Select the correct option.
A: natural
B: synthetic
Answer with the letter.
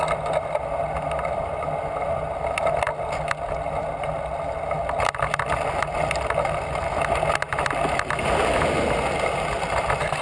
A